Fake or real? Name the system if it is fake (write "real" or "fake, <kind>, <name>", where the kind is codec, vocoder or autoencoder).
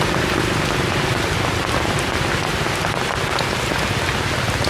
real